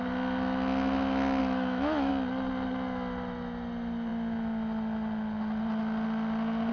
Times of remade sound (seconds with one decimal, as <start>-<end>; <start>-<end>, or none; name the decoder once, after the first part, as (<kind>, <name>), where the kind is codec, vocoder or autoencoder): 1.4-2.1 (autoencoder, DAC-VAE)